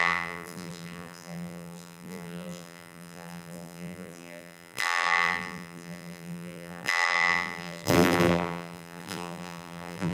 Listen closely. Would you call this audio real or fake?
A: fake